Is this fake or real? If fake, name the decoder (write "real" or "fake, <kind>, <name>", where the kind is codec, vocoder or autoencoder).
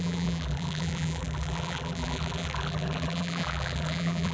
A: fake, vocoder, BigVGAN v2